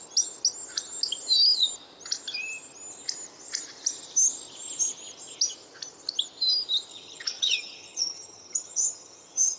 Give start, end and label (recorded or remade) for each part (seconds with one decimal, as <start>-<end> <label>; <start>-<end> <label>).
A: 0.0-6.9 recorded; 6.9-9.6 remade